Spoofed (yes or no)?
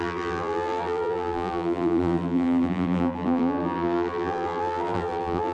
yes